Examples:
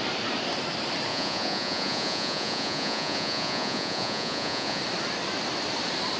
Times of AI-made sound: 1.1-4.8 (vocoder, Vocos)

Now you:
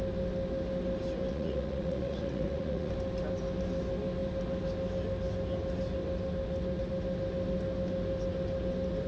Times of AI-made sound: 1.3-2.9 (vocoder, Vocos)